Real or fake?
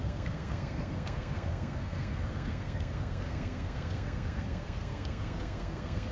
fake